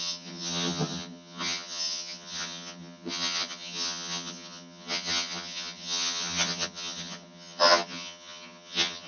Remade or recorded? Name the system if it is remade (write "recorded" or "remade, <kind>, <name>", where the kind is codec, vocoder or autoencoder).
remade, vocoder, HiFi-GAN